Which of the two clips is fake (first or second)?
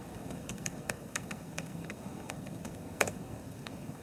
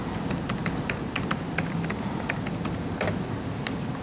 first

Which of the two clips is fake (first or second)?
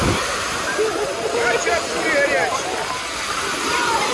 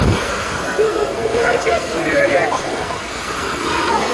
second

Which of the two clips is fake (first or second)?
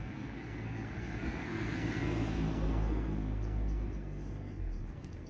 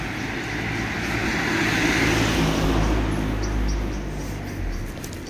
first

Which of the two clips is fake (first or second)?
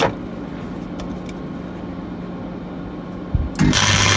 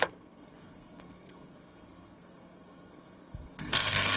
second